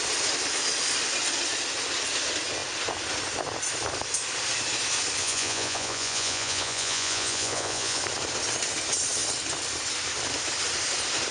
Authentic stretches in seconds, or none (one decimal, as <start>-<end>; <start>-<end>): 0.0-5.2; 8.0-11.3